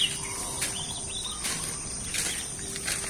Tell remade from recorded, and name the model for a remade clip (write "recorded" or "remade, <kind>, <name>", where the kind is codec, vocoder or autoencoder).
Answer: recorded